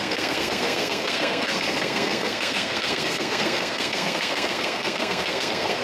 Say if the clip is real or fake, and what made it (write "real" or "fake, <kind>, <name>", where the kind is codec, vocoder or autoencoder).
fake, codec, SNAC